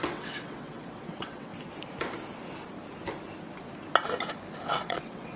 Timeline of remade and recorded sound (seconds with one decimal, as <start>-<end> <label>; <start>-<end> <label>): 0.0-1.5 remade; 1.5-4.7 recorded; 4.7-5.4 remade

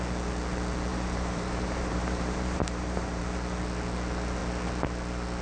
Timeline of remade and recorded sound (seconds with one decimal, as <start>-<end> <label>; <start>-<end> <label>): 0.0-0.9 recorded; 0.9-3.2 remade; 3.2-5.4 recorded